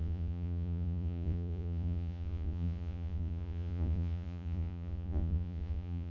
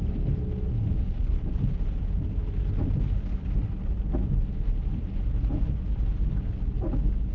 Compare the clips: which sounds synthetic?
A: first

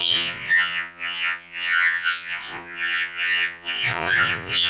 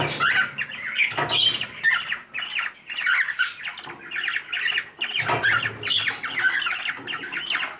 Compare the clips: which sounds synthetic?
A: first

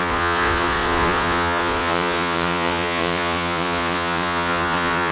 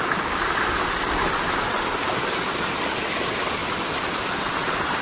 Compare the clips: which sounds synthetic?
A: first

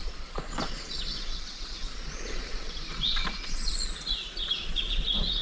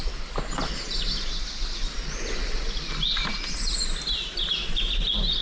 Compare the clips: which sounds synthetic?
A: first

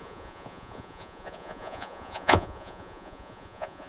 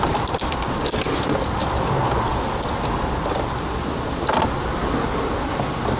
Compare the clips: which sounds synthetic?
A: first